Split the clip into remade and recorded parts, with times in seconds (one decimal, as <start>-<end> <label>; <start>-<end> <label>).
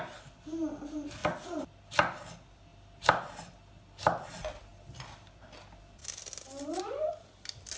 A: 0.0-7.8 recorded